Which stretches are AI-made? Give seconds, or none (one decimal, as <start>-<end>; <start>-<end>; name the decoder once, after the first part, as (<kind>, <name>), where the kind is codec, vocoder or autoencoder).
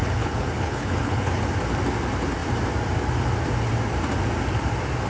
0.0-1.4 (codec, HILCodec)